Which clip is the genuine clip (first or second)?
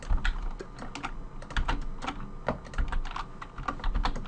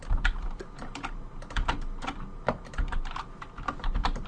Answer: first